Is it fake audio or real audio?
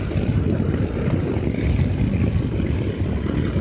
real